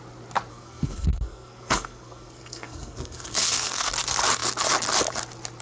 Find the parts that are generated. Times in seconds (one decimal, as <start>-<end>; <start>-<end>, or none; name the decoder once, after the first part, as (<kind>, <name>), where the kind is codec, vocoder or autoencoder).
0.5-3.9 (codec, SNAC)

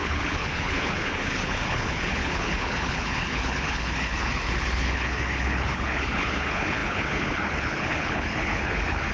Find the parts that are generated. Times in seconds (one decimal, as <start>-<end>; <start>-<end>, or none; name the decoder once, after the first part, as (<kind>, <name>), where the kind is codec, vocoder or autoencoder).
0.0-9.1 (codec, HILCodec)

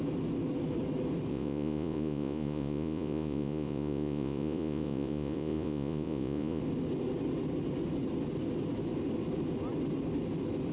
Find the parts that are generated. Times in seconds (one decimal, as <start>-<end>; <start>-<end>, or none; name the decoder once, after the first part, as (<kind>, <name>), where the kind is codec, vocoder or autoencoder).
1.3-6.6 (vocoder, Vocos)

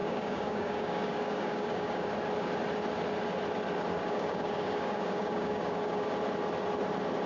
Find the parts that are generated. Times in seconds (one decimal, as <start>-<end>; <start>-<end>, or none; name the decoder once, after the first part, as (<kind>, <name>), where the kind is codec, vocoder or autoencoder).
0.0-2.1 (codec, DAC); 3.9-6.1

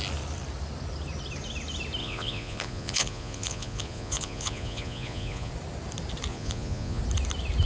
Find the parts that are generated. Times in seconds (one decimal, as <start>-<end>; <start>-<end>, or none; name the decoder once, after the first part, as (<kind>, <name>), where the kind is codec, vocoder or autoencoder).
2.0-5.5 (vocoder, Vocos); 6.3-7.0